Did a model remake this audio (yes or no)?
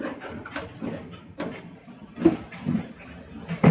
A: yes